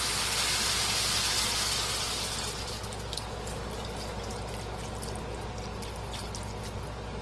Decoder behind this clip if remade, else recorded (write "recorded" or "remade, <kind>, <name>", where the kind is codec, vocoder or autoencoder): recorded